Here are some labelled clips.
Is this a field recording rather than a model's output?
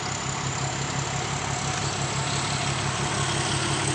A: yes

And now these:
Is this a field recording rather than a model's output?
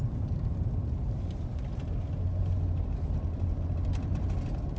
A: yes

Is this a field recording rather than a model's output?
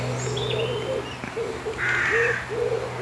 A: yes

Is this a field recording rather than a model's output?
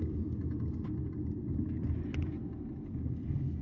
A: yes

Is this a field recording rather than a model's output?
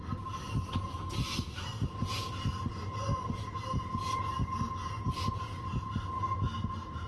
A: yes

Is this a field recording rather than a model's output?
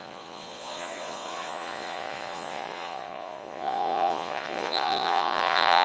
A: no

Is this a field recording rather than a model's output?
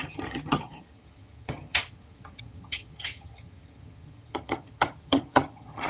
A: no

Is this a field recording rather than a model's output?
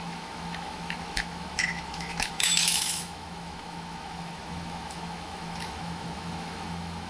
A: no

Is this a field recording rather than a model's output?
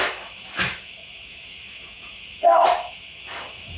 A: no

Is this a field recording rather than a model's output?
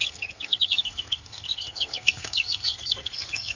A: no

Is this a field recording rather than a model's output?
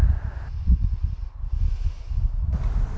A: yes